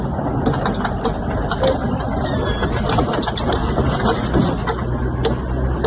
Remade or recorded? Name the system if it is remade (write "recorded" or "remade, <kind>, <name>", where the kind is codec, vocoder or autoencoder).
recorded